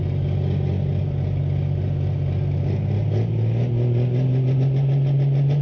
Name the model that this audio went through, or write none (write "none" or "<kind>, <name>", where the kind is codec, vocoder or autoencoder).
none